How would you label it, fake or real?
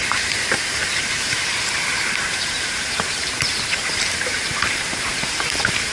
fake